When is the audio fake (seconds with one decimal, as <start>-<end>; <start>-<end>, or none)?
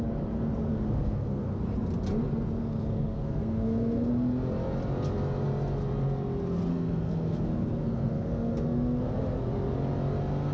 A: 0.7-1.6; 2.6-4.1; 6.7-9.1